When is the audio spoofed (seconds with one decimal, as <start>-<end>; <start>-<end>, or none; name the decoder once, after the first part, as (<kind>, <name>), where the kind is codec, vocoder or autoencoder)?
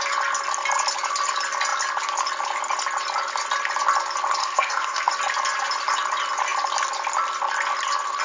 4.4-5.1 (codec, SNAC)